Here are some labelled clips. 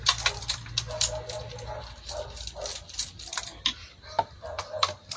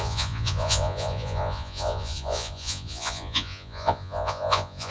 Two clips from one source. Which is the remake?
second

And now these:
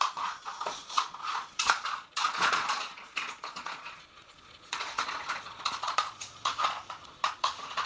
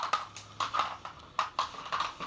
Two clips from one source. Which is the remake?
first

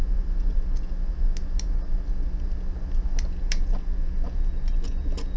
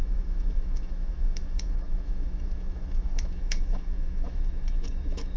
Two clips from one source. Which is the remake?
second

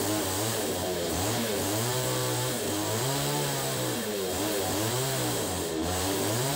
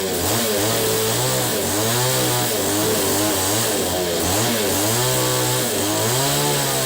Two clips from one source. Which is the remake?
first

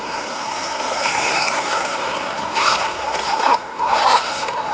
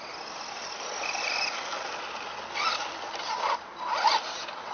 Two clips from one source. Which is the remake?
first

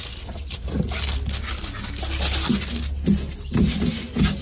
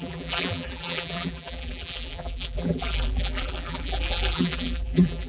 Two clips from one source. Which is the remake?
second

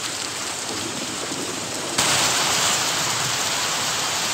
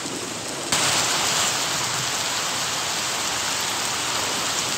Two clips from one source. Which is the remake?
first